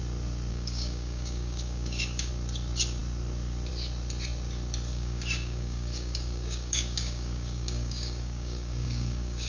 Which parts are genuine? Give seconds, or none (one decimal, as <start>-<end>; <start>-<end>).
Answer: 0.0-0.5; 2.3-4.9